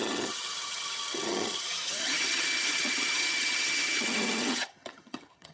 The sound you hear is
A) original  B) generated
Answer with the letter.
B